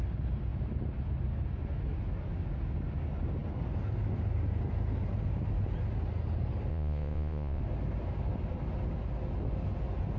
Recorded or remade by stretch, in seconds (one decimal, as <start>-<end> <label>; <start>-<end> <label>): 0.0-6.7 recorded; 6.7-7.6 remade; 7.6-10.2 recorded

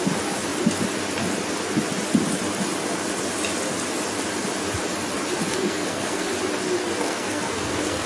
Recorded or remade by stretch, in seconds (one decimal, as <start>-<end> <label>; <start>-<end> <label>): 0.0-5.5 recorded; 5.5-6.3 remade; 6.3-6.8 recorded; 6.8-8.1 remade